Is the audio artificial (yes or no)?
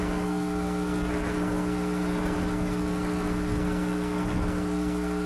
yes